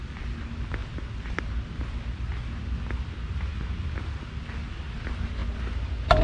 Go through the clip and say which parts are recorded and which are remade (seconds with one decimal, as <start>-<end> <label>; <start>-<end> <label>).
0.0-6.2 recorded